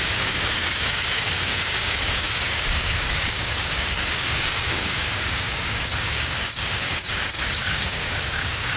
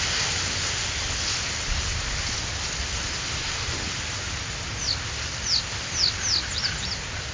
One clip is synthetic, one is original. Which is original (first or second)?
second